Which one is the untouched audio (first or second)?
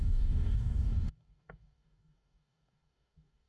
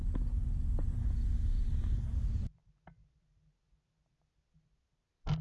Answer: second